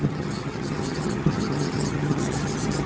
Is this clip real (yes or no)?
no